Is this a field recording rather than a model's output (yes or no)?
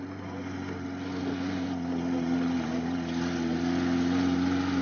yes